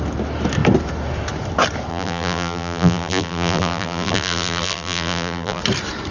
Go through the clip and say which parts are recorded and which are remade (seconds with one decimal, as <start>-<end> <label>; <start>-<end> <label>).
0.0-1.9 recorded; 1.9-5.6 remade; 5.6-6.1 recorded